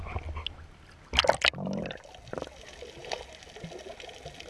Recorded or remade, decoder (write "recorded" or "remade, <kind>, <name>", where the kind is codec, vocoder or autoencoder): recorded